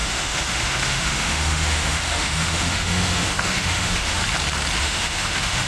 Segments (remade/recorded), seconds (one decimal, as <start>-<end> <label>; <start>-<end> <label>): 0.0-4.2 remade; 4.2-4.8 recorded; 4.8-5.7 remade